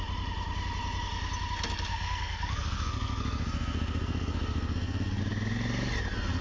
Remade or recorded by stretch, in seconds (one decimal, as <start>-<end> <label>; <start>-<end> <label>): 0.0-1.9 recorded; 1.9-5.2 remade; 5.2-6.4 recorded